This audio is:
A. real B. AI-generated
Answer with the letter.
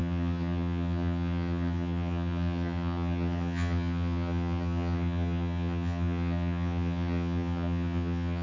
B